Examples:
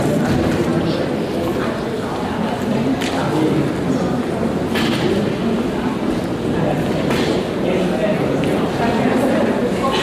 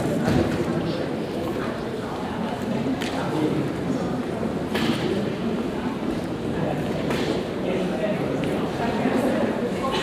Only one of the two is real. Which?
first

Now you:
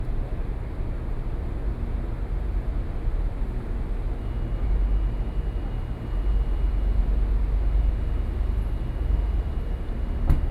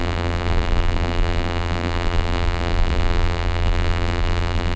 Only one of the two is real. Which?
first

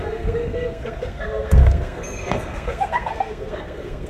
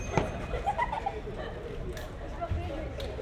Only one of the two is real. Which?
second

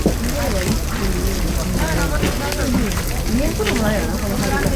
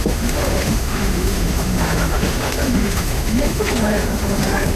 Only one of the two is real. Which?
first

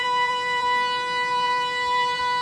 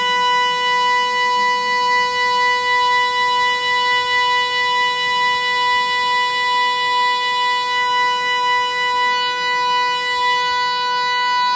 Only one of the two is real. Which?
second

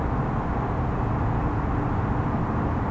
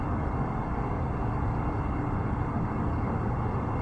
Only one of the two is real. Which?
first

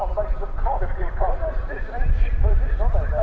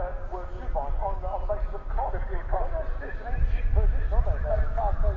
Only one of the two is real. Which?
second